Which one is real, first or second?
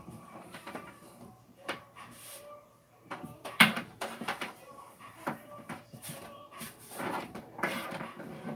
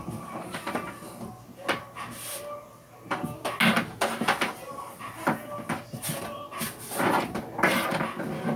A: second